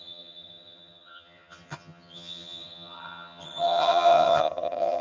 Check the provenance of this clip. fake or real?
fake